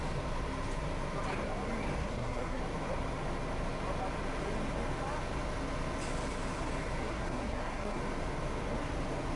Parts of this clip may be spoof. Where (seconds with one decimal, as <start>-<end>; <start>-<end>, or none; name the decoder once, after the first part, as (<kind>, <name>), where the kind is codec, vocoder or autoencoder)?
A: 2.0-2.6 (codec, SNAC); 7.0-8.0